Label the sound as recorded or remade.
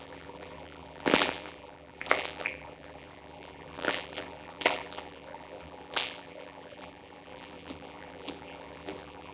remade